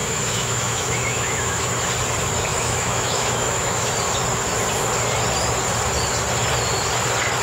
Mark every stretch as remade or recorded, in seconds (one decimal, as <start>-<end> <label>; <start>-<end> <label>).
0.0-1.7 remade; 1.7-2.5 recorded; 2.5-3.9 remade; 3.9-7.4 recorded